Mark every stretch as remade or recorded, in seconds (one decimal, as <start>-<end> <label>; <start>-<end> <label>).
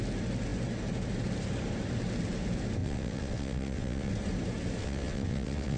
0.0-2.8 recorded; 2.8-4.1 remade; 4.1-4.8 recorded; 4.8-5.8 remade